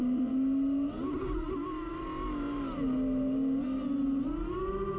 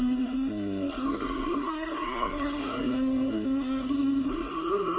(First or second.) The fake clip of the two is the second